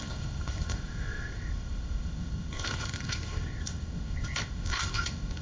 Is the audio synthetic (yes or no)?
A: yes